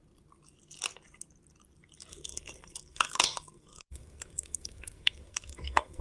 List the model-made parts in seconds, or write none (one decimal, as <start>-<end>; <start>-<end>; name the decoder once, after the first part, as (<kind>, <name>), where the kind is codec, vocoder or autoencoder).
2.1-6.0 (codec, SNAC)